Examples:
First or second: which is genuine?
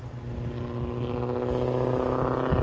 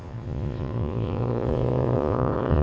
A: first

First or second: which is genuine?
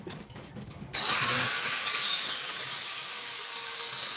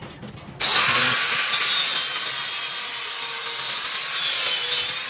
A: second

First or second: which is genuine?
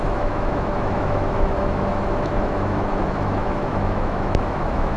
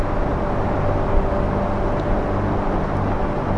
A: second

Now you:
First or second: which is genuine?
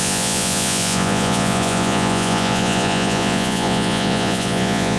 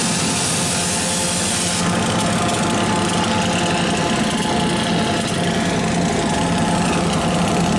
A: second